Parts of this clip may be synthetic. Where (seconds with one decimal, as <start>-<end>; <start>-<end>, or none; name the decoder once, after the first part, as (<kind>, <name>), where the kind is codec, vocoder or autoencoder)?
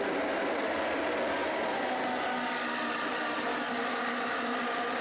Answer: none